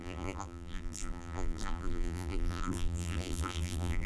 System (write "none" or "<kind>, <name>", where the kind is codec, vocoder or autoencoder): vocoder, BigVGAN v2